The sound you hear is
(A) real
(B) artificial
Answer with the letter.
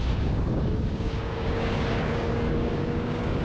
B